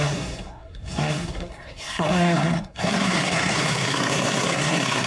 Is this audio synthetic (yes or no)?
yes